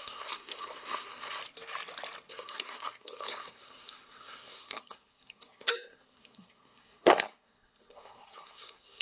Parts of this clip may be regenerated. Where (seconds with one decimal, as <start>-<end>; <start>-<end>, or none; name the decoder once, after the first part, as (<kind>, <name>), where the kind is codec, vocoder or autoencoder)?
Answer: 0.0-1.4 (codec, SNAC); 2.3-9.0